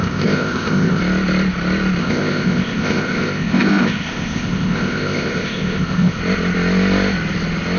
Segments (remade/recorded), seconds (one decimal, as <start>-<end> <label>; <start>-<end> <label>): 0.0-1.0 remade; 1.0-2.0 recorded; 2.0-6.2 remade; 6.2-7.8 recorded